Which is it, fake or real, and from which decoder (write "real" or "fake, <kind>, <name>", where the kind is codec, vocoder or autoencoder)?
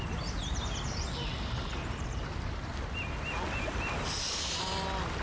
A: real